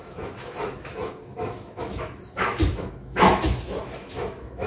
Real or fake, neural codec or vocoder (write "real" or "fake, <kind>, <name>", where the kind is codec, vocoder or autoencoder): fake, autoencoder, DAC-VAE